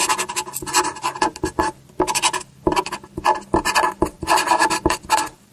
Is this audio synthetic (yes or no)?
no